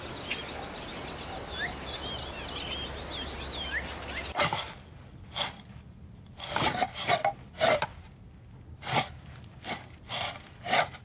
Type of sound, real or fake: real